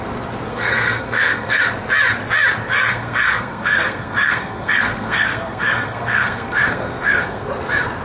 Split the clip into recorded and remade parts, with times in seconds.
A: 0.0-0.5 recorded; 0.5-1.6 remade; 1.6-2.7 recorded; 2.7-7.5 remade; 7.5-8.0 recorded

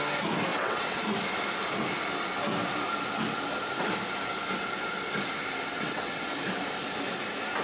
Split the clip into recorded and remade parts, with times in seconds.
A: 0.0-0.5 recorded; 0.5-1.0 remade; 1.0-5.7 recorded; 5.7-6.3 remade; 6.3-7.6 recorded

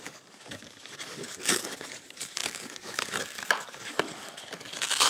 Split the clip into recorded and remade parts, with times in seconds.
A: 0.0-5.1 remade

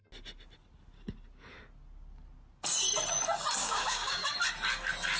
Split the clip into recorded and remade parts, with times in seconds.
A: 0.0-3.6 recorded; 3.6-4.3 remade; 4.3-5.2 recorded